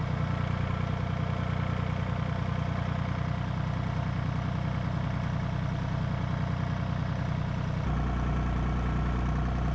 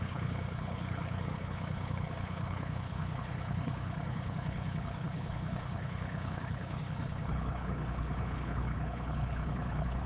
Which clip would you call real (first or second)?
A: first